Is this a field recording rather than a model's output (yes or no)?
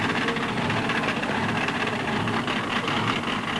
yes